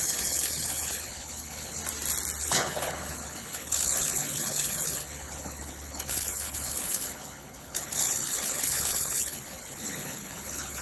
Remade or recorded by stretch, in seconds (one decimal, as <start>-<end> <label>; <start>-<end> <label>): 0.0-1.8 remade; 1.8-2.4 recorded; 2.4-10.8 remade